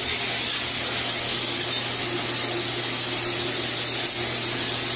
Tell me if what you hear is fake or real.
real